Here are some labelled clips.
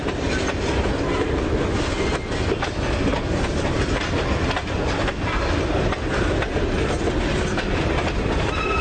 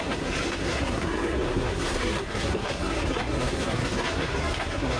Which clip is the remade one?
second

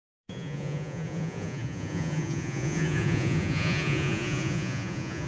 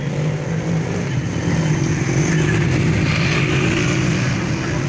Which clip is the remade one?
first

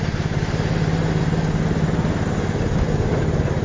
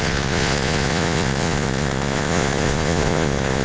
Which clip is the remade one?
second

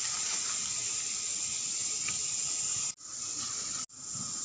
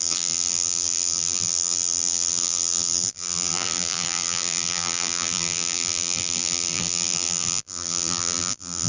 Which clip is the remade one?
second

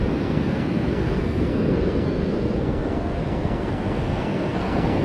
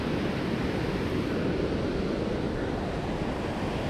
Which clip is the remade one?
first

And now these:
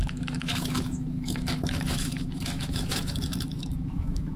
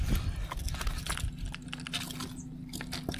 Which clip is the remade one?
first